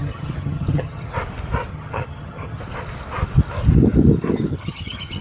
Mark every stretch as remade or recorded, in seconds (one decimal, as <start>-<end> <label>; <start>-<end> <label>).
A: 0.0-1.1 remade; 1.1-1.7 recorded; 1.7-2.6 remade; 2.6-4.5 recorded; 4.5-5.2 remade